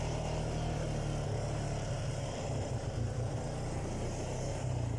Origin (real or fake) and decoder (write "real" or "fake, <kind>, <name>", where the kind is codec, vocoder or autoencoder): fake, vocoder, BigVGAN v2